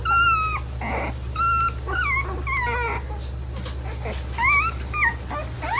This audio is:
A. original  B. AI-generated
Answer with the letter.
A